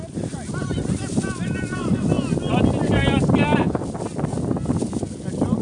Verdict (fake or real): fake